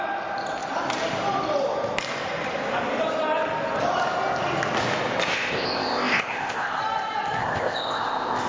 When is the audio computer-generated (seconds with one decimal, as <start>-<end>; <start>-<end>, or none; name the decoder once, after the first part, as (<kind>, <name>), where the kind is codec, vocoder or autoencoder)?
5.3-6.8 (codec, ZipCodec); 7.4-8.5